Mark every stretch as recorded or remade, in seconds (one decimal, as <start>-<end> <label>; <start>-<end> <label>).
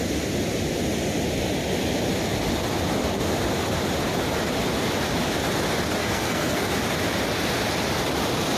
0.0-6.0 recorded; 6.0-6.7 remade; 6.7-8.6 recorded